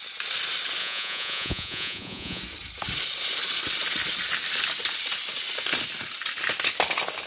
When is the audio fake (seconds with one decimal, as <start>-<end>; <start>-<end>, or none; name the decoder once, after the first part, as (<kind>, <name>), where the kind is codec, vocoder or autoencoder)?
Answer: 0.8-2.4 (vocoder, Vocos)